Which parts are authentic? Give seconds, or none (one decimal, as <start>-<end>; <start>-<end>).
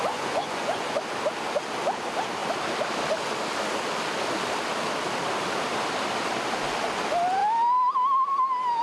1.0-8.8